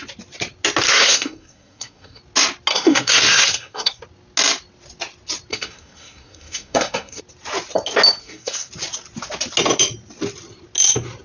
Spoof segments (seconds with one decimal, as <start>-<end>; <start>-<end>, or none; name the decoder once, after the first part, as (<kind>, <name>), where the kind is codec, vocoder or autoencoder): 0.9-2.2 (codec, SNAC); 2.7-4.0; 5.5-7.2; 8.2-8.7